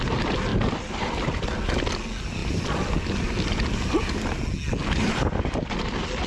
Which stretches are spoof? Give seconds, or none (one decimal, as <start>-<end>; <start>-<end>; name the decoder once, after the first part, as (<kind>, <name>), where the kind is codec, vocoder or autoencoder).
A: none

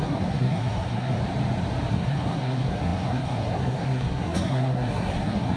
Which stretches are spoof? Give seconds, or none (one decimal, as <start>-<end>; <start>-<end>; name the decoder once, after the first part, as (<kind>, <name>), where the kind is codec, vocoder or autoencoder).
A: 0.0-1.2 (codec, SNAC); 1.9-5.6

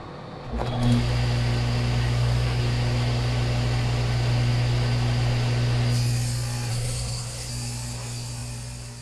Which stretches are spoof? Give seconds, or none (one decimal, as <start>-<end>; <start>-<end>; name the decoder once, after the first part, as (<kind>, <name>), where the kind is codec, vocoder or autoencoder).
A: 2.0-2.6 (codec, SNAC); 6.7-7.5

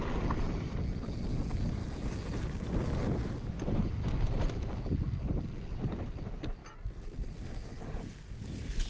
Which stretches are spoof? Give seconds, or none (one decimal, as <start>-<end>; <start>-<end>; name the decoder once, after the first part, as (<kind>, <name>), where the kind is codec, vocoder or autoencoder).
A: none

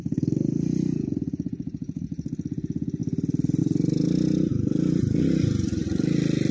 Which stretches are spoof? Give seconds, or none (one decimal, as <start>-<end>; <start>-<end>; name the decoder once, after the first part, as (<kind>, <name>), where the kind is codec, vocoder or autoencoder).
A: none